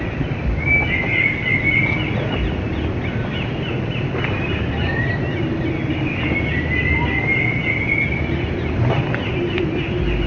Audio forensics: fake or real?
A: real